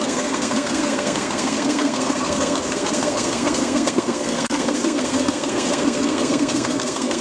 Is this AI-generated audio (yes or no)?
yes